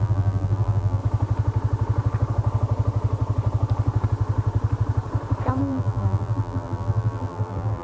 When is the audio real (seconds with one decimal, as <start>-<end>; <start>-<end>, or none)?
1.0-5.6